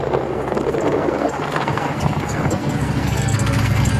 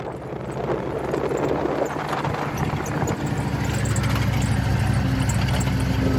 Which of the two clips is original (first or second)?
second